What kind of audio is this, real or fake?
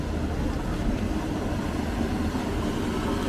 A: real